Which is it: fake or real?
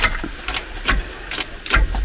real